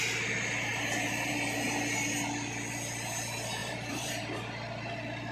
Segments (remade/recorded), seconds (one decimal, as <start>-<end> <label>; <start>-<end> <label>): 0.0-0.7 recorded; 0.7-1.3 remade; 1.3-3.6 recorded; 3.6-4.4 remade; 4.4-5.3 recorded